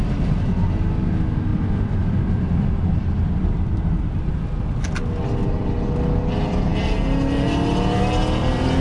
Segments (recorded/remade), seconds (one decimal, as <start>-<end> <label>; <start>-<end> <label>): 0.0-1.5 recorded; 1.5-4.4 remade; 4.4-8.8 recorded